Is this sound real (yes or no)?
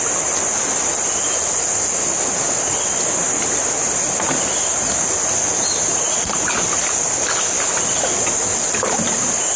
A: yes